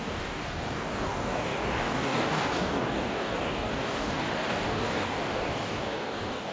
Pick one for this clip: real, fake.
fake